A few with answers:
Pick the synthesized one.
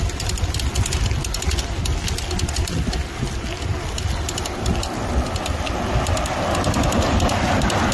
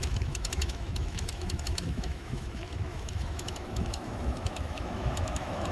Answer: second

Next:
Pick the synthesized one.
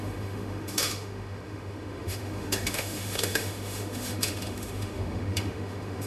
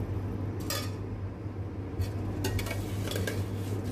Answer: first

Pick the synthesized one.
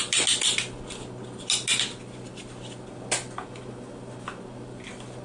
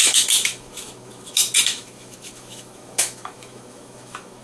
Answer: second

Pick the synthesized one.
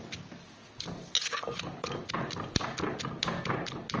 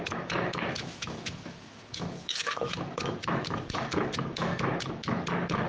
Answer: second